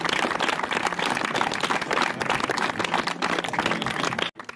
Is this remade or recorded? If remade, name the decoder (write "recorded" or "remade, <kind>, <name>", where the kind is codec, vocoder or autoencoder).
recorded